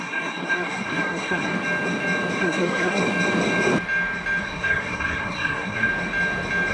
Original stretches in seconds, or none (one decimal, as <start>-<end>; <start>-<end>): 1.5-2.4; 3.0-4.4; 5.9-6.7